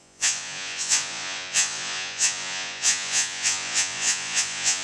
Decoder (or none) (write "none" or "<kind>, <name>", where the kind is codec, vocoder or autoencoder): vocoder, Vocos